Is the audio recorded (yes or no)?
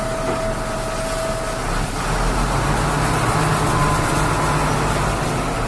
yes